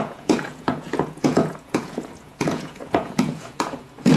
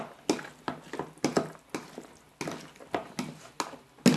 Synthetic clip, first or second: first